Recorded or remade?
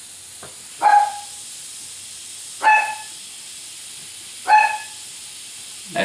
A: recorded